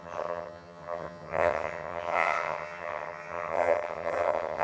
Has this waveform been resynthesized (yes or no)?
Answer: yes